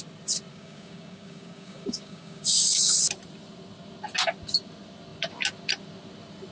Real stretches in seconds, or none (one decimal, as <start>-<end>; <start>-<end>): 0.0-0.5; 3.0-6.5